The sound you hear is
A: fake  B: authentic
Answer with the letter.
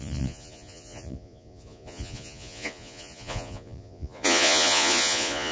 A